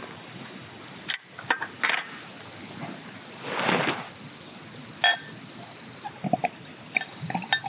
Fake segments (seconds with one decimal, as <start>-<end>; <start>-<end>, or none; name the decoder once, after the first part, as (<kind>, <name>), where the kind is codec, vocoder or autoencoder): none